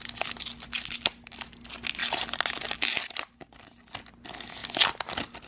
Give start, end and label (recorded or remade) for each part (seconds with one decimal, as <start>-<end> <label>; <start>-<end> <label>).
0.0-5.5 recorded